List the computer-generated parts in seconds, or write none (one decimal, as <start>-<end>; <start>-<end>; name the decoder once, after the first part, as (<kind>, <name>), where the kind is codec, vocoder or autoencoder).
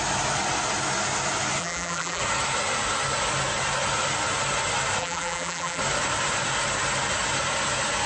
1.6-2.2 (vocoder, BigVGAN v2); 5.0-5.8